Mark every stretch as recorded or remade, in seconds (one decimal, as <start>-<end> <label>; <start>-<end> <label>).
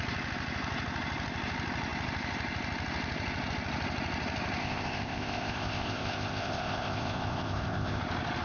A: 0.0-4.6 recorded; 4.6-8.0 remade; 8.0-8.4 recorded